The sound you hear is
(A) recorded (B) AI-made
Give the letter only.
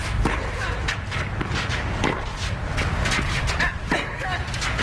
A